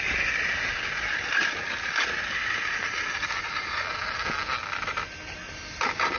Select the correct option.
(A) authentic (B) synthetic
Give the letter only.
A